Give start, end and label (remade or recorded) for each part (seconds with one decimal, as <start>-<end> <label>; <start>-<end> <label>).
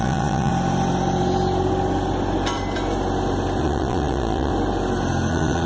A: 0.0-0.5 remade; 0.5-3.6 recorded; 3.6-4.5 remade; 4.5-5.3 recorded; 5.3-5.7 remade